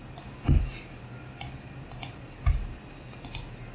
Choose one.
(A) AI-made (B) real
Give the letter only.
B